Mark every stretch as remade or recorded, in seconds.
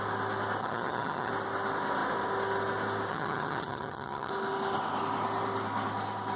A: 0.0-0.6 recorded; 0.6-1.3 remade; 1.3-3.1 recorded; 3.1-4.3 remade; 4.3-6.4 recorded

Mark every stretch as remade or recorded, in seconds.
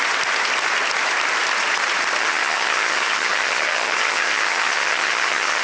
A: 0.0-2.2 recorded; 2.2-5.6 remade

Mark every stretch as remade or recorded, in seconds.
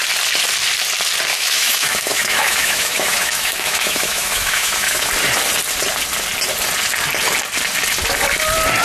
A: 0.0-1.3 recorded; 1.3-5.1 remade; 5.1-8.8 recorded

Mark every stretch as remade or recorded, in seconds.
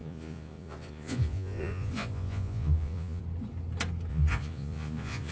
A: 0.0-3.2 remade; 3.2-4.1 recorded; 4.1-5.3 remade